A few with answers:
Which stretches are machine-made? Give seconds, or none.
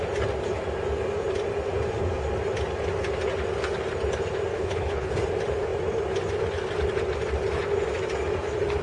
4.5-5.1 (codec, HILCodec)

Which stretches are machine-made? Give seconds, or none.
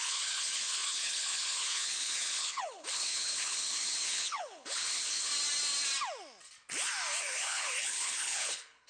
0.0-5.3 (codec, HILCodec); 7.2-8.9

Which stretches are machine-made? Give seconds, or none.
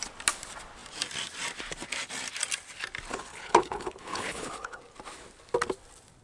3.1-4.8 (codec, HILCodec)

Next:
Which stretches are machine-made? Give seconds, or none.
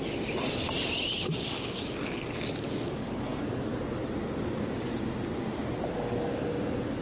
none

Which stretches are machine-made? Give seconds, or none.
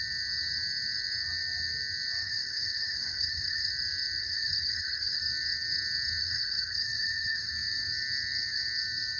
2.2-3.7 (codec, HILCodec); 4.2-5.2; 6.2-7.5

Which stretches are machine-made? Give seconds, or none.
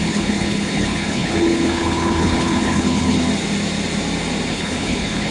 0.0-3.2 (codec, HILCodec); 4.5-5.3